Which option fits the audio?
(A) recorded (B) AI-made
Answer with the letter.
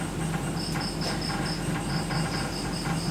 A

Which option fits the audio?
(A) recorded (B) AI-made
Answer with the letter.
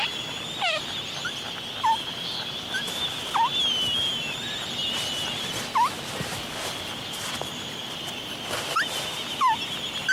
A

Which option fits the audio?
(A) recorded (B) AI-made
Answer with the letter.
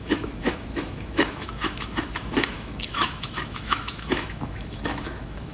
B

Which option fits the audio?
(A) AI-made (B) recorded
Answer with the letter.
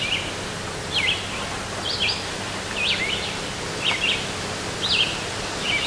B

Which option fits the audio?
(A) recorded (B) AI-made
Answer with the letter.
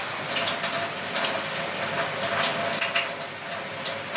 A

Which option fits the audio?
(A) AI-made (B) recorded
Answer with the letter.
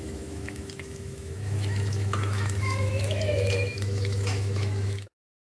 A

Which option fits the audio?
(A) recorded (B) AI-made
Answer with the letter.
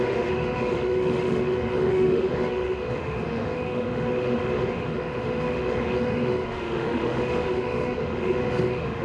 B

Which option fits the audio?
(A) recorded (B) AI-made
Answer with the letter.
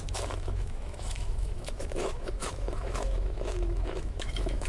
B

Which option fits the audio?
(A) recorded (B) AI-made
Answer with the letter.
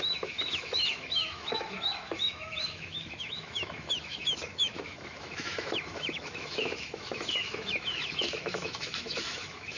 B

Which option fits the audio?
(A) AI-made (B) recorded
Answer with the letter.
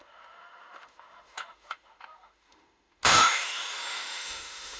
A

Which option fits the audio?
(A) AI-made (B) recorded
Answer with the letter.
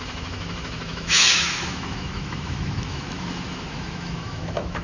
A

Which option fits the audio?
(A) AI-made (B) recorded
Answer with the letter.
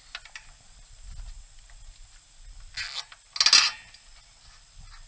B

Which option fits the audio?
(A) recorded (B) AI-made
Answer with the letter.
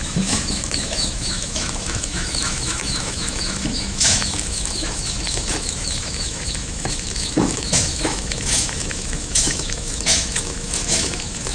B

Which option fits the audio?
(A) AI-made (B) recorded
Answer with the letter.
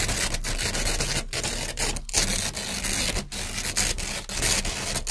B